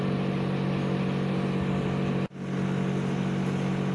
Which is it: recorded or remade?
recorded